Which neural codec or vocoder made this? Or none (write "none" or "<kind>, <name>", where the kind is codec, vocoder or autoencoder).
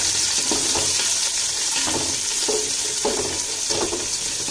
none